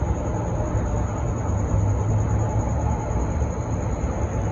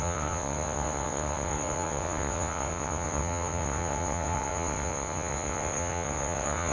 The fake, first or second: second